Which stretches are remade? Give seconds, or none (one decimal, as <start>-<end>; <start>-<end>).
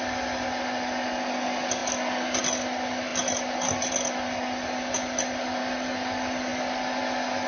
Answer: none